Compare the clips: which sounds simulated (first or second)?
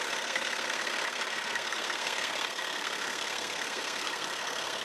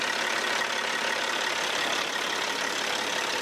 first